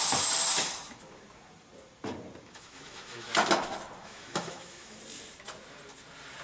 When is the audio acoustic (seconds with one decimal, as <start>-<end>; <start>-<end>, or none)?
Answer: 0.0-2.4; 3.3-4.0; 5.0-6.4